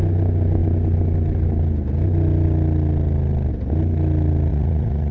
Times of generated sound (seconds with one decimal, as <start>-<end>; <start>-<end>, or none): 4.5-5.1